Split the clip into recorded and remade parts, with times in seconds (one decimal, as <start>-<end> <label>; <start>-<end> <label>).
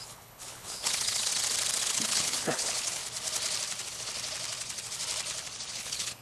0.0-1.3 remade; 1.3-1.8 recorded; 1.8-3.0 remade; 3.0-5.7 recorded; 5.7-6.2 remade